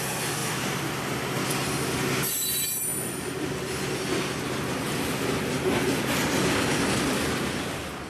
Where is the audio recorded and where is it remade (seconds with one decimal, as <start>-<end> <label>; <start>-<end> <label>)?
0.0-0.4 recorded; 0.4-0.9 remade; 0.9-8.1 recorded